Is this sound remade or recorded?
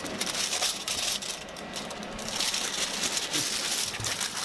recorded